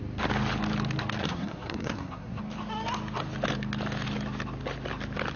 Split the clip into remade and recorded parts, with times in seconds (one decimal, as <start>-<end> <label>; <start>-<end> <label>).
0.0-1.2 recorded; 1.2-2.4 remade; 2.4-5.4 recorded